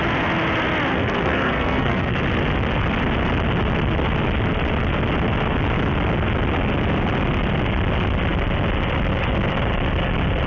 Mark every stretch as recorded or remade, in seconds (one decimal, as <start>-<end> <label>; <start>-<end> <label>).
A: 0.0-0.9 recorded; 0.9-2.2 remade; 2.2-10.5 recorded